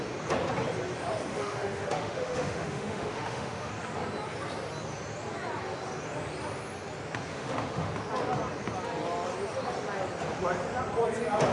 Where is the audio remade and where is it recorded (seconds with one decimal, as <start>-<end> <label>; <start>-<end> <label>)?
0.0-1.3 recorded; 1.3-3.7 remade; 3.7-7.3 recorded; 7.3-7.9 remade; 7.9-11.5 recorded